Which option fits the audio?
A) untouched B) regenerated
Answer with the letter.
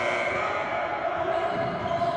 B